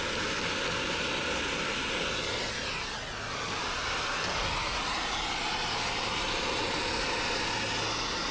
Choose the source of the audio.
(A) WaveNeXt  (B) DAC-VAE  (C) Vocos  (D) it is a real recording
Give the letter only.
D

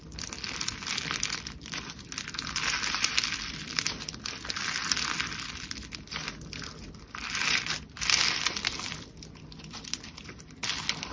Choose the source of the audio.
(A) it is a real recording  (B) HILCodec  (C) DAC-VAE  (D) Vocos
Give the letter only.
A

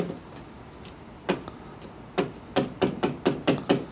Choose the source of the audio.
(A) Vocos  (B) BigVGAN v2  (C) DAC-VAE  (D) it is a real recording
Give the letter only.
D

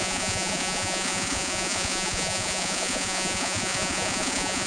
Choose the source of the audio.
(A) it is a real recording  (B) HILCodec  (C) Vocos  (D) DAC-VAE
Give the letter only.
C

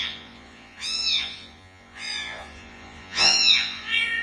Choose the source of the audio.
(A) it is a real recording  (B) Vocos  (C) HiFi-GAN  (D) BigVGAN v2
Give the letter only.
B